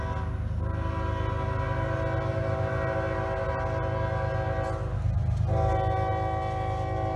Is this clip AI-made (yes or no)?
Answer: no